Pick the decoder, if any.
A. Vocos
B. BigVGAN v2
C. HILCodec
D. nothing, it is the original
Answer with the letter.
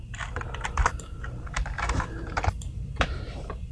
B